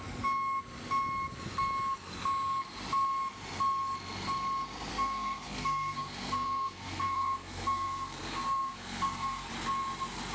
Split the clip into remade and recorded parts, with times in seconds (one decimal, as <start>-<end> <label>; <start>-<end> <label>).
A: 0.0-4.9 recorded; 4.9-9.5 remade; 9.5-10.3 recorded